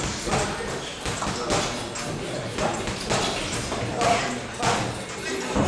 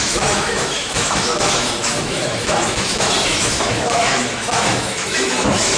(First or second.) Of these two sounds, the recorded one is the first